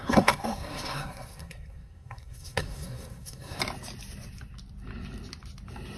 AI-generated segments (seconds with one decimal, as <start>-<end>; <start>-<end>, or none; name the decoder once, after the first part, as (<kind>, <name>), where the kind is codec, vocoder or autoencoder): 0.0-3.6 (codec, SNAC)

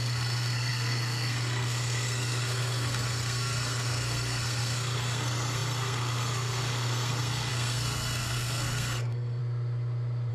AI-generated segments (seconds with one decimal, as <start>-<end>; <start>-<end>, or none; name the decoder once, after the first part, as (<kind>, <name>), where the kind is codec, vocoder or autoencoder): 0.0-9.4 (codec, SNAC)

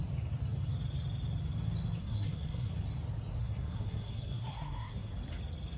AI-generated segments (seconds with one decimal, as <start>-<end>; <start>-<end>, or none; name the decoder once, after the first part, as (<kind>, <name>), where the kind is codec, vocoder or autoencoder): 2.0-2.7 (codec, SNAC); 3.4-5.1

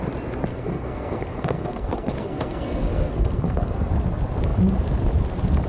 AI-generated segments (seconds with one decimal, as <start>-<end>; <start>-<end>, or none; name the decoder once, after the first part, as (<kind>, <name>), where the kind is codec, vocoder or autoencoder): 0.5-3.9 (codec, SNAC)

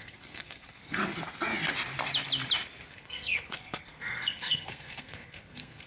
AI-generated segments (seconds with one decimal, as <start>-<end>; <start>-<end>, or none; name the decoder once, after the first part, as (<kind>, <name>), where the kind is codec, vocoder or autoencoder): 0.0-1.0 (codec, SNAC); 2.9-5.9